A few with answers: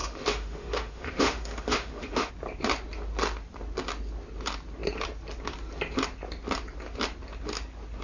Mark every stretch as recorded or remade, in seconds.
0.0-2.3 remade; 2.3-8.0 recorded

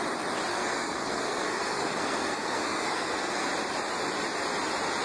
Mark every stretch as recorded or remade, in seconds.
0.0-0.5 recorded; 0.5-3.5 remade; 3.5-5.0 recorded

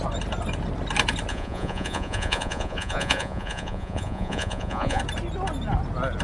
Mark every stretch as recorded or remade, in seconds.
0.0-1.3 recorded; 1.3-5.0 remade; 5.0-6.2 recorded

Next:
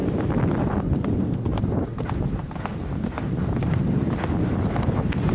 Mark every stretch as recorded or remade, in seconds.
0.0-1.0 recorded; 1.0-1.9 remade; 1.9-4.4 recorded; 4.4-5.3 remade